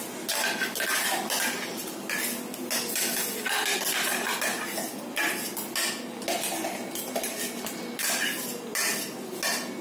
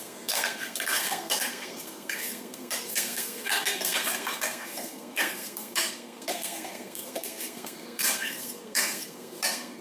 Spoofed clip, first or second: second